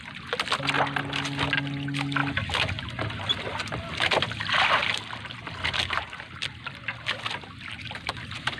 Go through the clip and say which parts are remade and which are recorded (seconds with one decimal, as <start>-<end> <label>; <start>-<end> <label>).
0.0-8.6 recorded